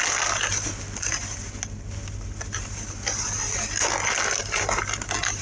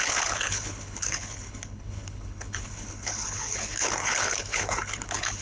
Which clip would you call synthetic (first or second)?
second